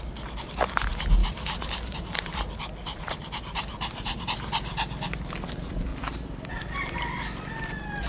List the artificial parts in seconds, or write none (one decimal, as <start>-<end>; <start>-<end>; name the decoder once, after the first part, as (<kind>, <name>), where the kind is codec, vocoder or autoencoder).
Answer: 1.2-4.2 (vocoder, BigVGAN v2); 5.9-6.5